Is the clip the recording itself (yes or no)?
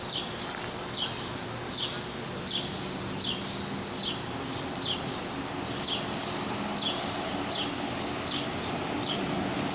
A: yes